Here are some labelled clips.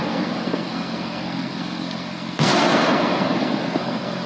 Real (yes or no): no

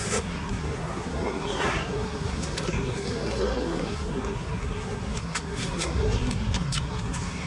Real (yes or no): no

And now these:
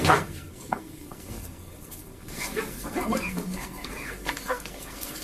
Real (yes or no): no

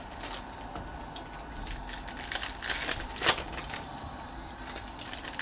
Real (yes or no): yes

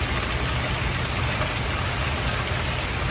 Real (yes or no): yes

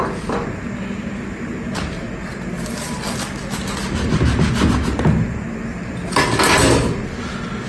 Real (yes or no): yes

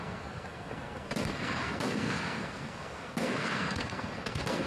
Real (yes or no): no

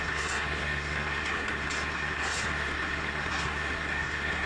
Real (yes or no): no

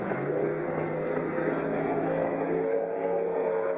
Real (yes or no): no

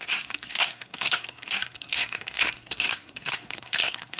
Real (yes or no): no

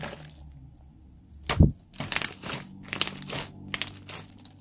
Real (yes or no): yes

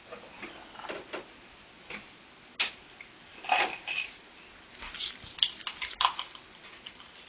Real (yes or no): yes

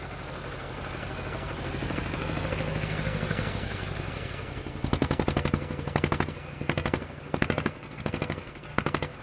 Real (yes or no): no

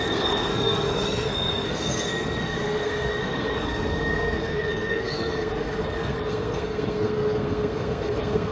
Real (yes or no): no